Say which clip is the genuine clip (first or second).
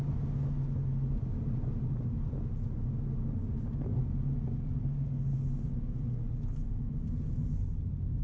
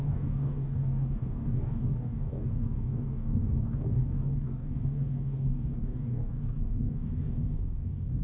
first